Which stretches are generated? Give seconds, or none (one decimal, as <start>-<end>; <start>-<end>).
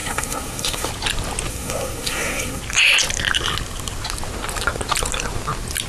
0.0-0.9; 1.5-2.6